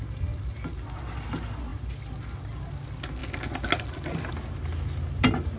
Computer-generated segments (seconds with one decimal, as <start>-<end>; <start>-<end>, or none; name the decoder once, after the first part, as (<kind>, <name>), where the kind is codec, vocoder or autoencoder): none